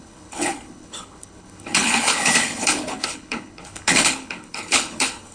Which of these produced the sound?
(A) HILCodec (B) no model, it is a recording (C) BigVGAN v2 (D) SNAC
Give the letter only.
A